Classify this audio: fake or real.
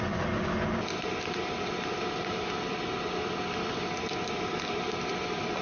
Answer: real